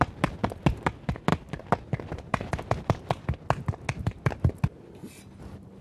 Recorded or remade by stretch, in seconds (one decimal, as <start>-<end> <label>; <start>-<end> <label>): 0.0-5.8 recorded